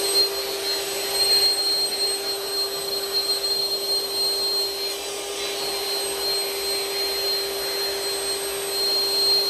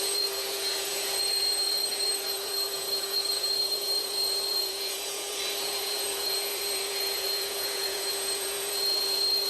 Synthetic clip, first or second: second